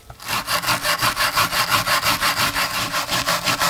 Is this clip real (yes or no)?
yes